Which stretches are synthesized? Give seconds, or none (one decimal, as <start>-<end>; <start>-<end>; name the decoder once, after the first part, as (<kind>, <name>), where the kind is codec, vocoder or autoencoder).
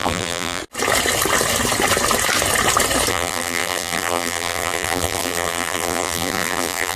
0.0-0.6 (vocoder, BigVGAN v2); 3.1-7.0